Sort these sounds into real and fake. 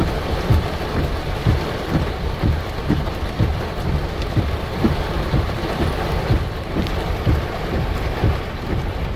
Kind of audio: fake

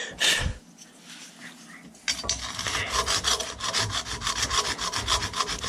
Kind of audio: real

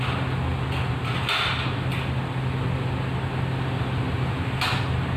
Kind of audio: real